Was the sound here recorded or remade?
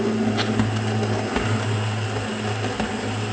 recorded